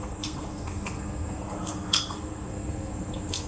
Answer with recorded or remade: remade